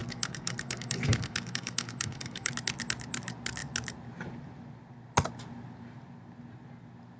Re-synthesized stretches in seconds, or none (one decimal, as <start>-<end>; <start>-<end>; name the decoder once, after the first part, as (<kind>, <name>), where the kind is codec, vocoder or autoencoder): 0.0-2.5 (codec, SNAC)